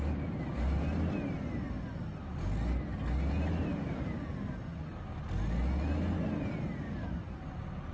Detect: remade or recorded recorded